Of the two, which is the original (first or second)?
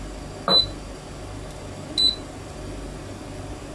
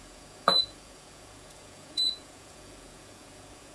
first